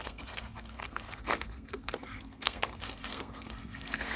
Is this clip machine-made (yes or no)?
yes